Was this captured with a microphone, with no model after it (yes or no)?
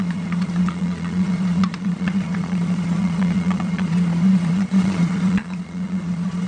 no